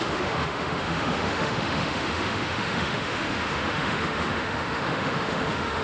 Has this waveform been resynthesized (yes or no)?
yes